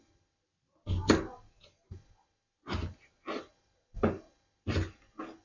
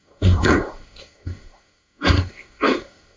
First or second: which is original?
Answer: first